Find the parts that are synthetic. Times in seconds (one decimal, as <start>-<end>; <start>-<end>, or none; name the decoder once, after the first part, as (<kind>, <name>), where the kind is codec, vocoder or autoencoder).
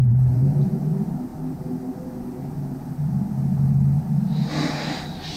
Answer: 0.0-0.9 (vocoder, BigVGAN v2)